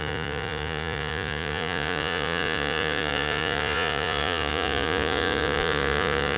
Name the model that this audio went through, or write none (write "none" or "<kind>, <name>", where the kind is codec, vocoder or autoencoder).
vocoder, Vocos